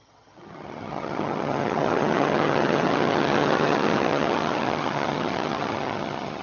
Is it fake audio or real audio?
fake